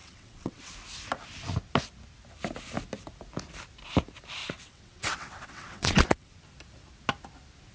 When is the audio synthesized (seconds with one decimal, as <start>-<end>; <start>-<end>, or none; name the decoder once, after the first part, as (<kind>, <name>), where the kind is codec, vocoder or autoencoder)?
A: 0.0-0.7 (vocoder, WaveNeXt); 4.4-6.3